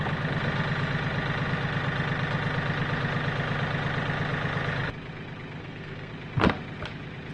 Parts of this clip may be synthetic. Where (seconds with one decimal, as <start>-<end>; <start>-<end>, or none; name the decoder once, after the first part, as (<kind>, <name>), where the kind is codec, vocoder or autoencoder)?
5.6-6.1 (codec, SNAC)